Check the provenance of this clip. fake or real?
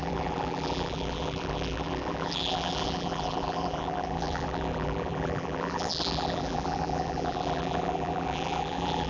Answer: fake